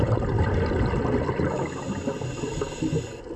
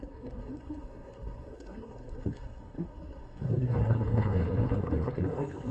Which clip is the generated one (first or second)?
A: second